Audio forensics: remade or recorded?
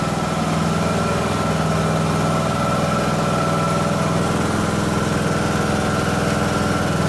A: recorded